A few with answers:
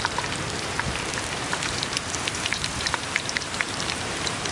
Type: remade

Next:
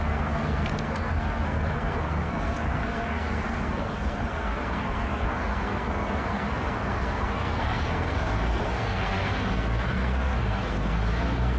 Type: remade